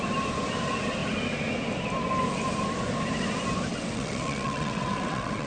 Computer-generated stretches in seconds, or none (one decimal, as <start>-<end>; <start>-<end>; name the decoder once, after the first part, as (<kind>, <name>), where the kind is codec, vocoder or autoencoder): 3.7-5.5 (vocoder, WaveNeXt)